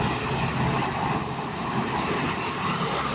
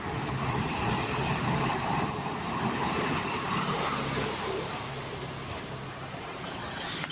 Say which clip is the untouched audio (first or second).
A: first